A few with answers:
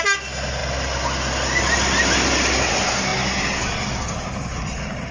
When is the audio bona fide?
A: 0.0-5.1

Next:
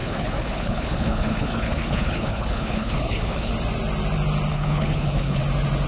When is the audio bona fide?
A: 3.5-4.5; 5.4-5.9

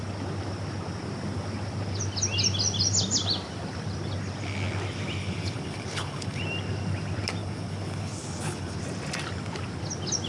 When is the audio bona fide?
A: 0.0-5.2; 6.4-7.4; 8.8-10.3